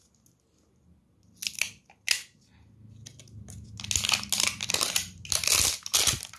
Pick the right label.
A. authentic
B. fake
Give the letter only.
A